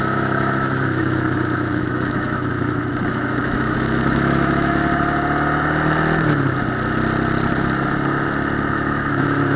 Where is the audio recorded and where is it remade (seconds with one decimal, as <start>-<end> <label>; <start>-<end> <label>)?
0.0-4.8 remade; 4.8-8.7 recorded; 8.7-9.6 remade